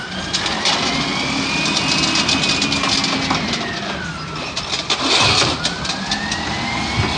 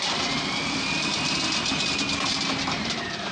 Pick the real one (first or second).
first